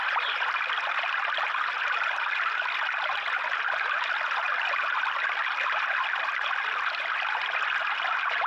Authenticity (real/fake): real